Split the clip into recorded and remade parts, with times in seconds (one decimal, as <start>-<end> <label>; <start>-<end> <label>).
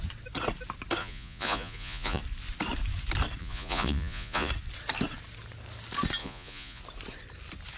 0.0-1.0 recorded; 1.0-2.2 remade; 2.2-3.4 recorded; 3.4-4.5 remade; 4.5-6.2 recorded; 6.2-6.8 remade; 6.8-7.8 recorded